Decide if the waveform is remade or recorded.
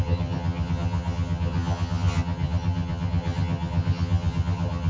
remade